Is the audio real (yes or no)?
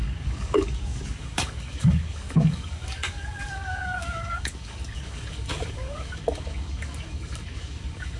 no